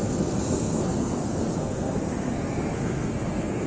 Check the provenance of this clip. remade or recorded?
remade